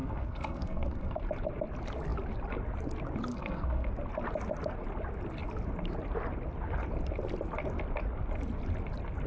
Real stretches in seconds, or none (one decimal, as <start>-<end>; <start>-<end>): 1.2-3.3; 3.9-9.3